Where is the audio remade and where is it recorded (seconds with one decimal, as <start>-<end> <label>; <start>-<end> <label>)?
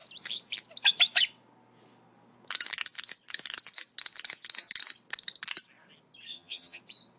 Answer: 0.0-6.3 recorded; 6.3-6.8 remade; 6.8-7.2 recorded